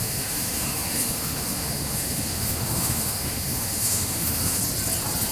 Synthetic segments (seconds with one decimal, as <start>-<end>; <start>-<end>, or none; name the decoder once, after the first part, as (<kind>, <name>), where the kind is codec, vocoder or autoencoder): 0.0-4.6 (autoencoder, DAC-VAE)